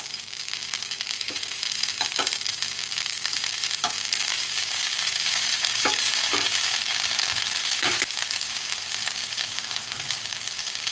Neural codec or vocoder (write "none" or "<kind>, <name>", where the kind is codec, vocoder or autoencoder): codec, DAC